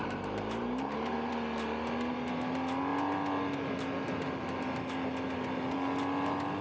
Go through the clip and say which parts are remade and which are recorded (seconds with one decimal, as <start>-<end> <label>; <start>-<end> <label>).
0.0-1.3 remade; 1.3-6.6 recorded

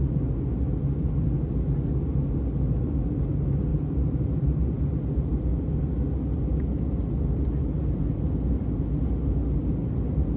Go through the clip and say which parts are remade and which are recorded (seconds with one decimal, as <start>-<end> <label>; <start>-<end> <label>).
0.0-3.7 recorded; 3.7-4.6 remade; 4.6-10.4 recorded